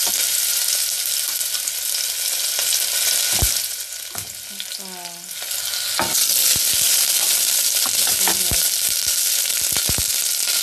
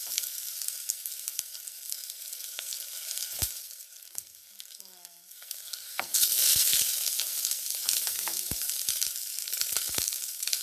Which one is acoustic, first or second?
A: first